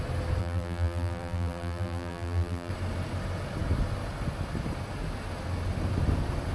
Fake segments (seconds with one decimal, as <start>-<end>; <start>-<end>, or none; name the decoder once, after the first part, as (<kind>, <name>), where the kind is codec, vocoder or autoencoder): 0.4-2.7 (vocoder, BigVGAN v2)